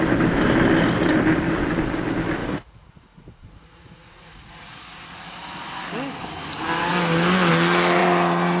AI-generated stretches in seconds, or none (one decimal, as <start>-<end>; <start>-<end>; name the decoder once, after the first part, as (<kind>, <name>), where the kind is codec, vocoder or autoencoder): 2.4-5.7 (vocoder, Vocos)

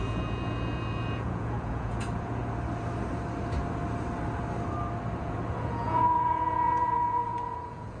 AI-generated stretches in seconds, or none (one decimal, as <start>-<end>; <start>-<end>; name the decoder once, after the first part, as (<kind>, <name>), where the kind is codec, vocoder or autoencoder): 0.0-2.4 (vocoder, Vocos); 5.2-8.0

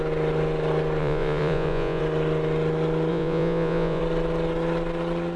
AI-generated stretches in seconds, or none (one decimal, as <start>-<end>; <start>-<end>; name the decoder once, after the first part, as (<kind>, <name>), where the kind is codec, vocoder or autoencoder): 1.0-2.0 (vocoder, Vocos); 3.1-4.0

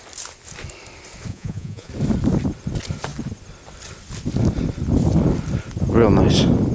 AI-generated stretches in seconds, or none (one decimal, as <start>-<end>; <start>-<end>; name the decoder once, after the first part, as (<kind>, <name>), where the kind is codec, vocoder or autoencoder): 1.3-1.9 (vocoder, Vocos)